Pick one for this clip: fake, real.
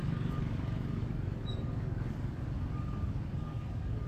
fake